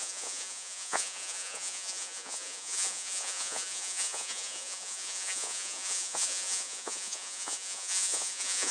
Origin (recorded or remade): remade